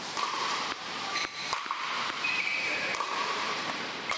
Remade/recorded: remade